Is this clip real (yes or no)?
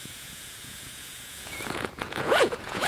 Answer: no